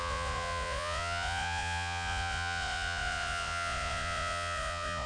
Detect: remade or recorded remade